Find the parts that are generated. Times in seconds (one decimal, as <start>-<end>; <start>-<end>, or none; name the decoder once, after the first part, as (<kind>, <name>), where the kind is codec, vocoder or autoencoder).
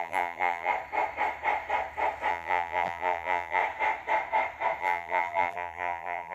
0.0-0.7 (vocoder, BigVGAN v2); 2.3-3.6; 4.8-6.3